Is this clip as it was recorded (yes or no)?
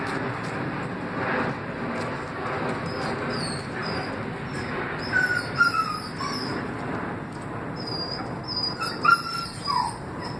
yes